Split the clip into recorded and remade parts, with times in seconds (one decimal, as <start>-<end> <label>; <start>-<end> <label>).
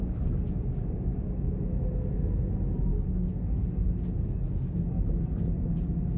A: 0.0-6.2 recorded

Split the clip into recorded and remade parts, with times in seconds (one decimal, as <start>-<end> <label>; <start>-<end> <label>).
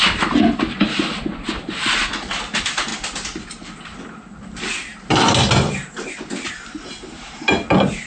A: 0.0-8.1 recorded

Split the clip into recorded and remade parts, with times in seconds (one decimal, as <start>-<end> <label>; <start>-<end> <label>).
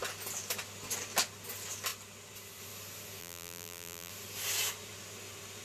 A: 0.0-3.2 recorded; 3.2-4.1 remade; 4.1-5.6 recorded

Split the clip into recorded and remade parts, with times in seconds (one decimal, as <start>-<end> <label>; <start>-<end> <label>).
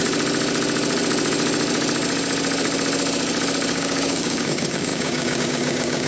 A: 0.0-3.7 recorded; 3.7-6.1 remade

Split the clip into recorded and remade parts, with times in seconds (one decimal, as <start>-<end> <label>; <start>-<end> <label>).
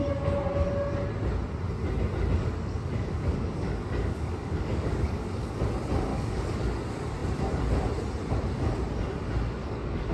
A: 0.0-2.4 recorded; 2.4-5.6 remade; 5.6-6.1 recorded; 6.1-6.6 remade; 6.6-9.6 recorded; 9.6-10.1 remade